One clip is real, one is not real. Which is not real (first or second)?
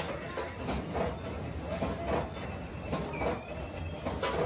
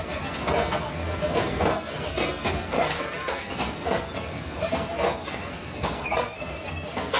second